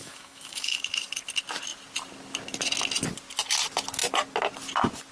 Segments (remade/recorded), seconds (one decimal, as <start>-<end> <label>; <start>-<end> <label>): 0.0-0.8 remade; 0.8-5.1 recorded